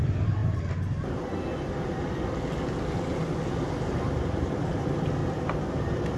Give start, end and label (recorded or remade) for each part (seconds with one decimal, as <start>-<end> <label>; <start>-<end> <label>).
0.0-0.4 remade; 0.4-4.1 recorded; 4.1-5.2 remade; 5.2-5.7 recorded; 5.7-6.2 remade